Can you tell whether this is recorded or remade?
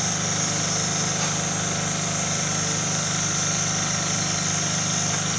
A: recorded